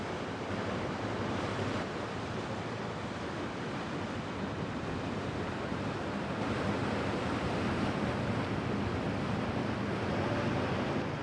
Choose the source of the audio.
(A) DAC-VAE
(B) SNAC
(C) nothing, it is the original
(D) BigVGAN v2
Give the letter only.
D